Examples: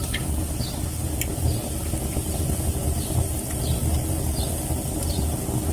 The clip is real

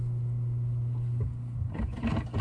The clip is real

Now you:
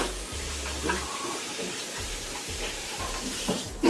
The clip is fake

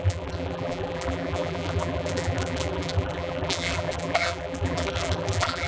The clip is fake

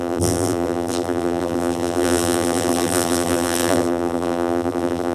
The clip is fake